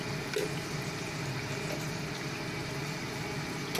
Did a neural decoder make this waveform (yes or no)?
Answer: no